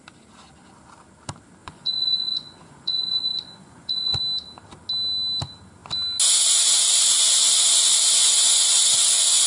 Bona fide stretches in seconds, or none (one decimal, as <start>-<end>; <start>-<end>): 0.0-1.6; 4.2-8.2; 8.9-9.5